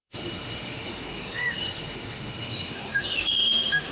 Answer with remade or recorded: remade